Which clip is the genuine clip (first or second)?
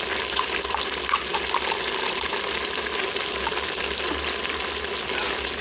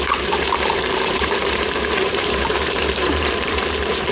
first